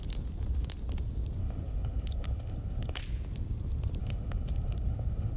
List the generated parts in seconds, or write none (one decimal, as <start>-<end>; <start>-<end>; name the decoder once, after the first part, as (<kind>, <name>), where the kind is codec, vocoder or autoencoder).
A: 1.4-3.0 (codec, HILCodec); 4.0-5.4